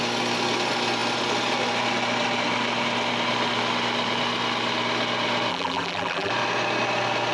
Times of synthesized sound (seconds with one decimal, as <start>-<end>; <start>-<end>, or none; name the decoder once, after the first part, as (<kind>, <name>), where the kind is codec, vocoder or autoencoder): 5.5-6.3 (vocoder, BigVGAN v2)